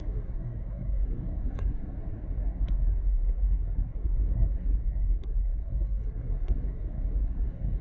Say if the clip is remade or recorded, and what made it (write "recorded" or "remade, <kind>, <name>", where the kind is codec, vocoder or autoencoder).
remade, codec, SNAC